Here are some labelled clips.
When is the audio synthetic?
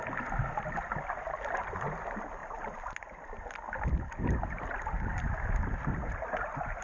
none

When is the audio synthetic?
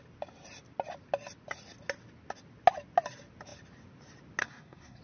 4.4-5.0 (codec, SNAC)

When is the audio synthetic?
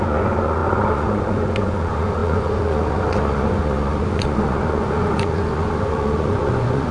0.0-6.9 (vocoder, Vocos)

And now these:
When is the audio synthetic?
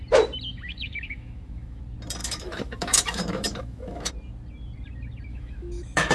0.5-1.8 (autoencoder, DAC-VAE); 2.2-4.1; 5.3-6.1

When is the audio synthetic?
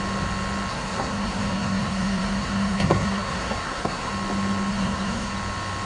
0.7-4.1 (codec, SNAC); 4.7-5.3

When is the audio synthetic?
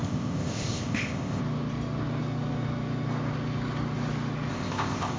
0.0-1.4 (codec, ZipCodec); 4.5-5.2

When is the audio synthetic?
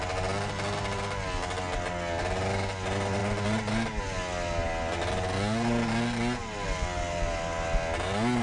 none